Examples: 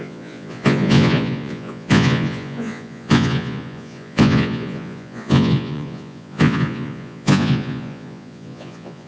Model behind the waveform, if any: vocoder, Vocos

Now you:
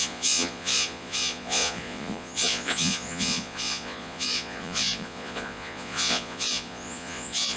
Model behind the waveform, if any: vocoder, Vocos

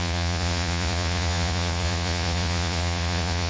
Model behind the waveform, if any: vocoder, Vocos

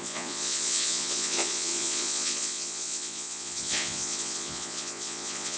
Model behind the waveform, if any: vocoder, Vocos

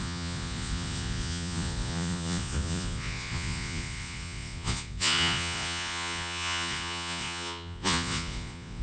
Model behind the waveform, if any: vocoder, Vocos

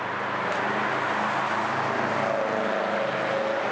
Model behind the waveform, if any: none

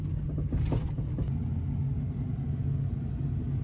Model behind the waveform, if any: none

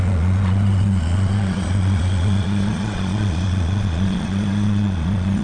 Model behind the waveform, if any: vocoder, Vocos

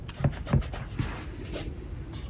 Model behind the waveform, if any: none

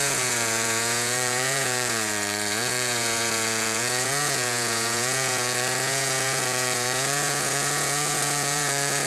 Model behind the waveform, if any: vocoder, Vocos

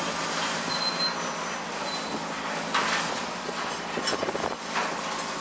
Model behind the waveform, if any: none